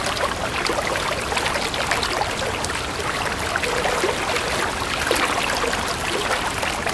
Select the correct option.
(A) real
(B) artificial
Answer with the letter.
A